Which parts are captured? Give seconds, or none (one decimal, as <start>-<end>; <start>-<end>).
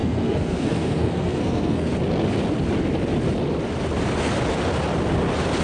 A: 1.9-5.6